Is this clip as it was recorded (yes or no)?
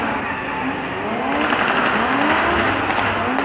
yes